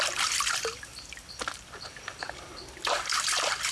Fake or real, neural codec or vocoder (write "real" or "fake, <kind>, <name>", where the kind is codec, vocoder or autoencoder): real